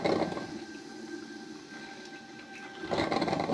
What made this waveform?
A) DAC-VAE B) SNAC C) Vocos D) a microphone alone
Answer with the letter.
D